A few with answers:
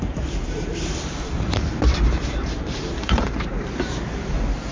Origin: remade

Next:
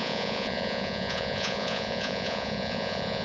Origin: remade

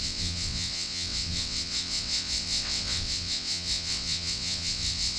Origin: remade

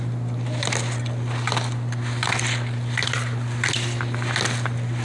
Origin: recorded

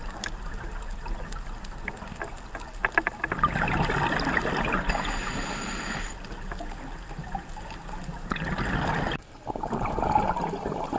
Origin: recorded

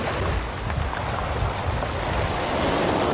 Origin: recorded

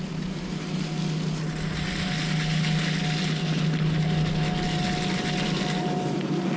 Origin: recorded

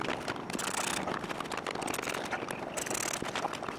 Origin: recorded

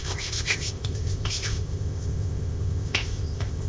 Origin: remade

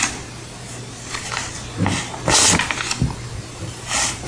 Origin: recorded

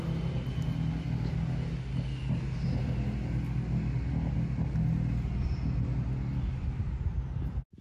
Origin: recorded